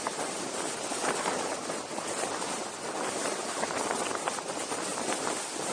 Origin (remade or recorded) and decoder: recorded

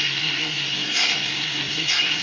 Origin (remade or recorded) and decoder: remade, codec, SNAC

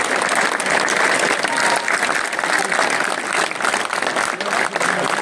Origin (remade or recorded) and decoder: recorded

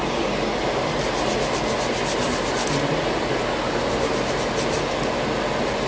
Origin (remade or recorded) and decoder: recorded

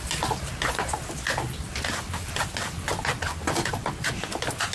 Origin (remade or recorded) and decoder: recorded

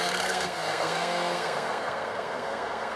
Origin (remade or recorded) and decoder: remade, codec, SNAC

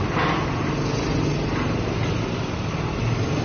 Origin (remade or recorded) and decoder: recorded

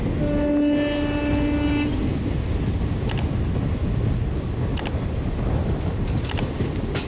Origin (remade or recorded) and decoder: recorded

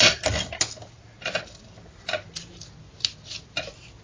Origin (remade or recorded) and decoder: recorded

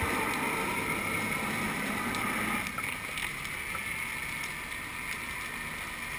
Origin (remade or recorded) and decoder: recorded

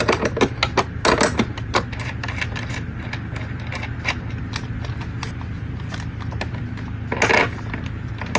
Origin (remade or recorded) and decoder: recorded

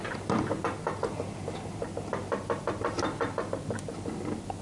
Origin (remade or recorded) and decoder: recorded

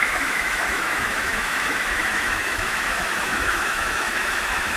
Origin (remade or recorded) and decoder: remade, autoencoder, DAC-VAE